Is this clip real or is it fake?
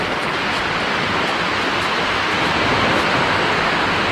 real